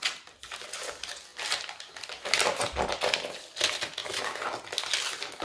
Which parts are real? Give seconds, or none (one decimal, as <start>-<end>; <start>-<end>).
0.0-5.4